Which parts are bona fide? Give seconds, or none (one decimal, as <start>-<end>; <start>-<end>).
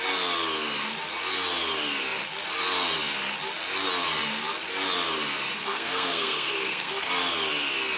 0.0-5.5; 7.1-8.0